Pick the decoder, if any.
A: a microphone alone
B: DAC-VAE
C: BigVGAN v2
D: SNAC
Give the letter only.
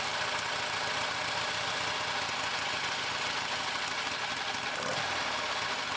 A